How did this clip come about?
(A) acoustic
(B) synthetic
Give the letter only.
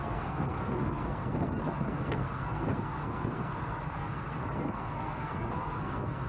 B